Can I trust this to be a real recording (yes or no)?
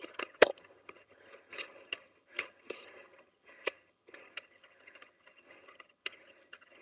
no